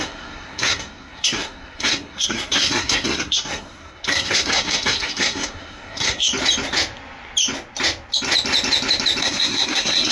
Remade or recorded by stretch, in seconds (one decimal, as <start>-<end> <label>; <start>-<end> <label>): 0.0-6.3 remade; 6.3-9.2 recorded; 9.2-10.1 remade